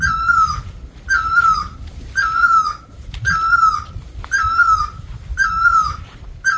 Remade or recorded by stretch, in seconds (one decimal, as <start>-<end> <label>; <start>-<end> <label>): 0.0-6.6 recorded